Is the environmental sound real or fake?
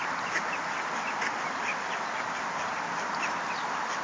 real